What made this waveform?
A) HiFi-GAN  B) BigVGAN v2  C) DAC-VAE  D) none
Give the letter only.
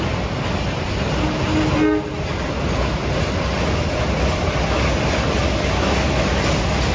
D